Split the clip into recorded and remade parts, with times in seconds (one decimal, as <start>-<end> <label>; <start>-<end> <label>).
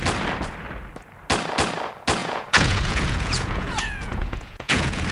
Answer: 0.0-2.2 recorded; 2.2-5.1 remade